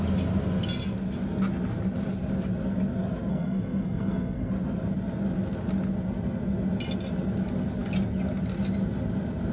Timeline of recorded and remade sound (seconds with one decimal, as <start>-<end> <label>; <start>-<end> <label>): 0.0-3.3 recorded; 3.3-4.5 remade; 4.5-9.5 recorded